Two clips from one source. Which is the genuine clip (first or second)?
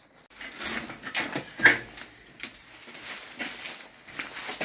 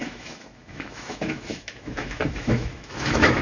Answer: first